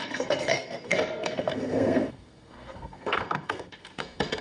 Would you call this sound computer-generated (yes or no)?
yes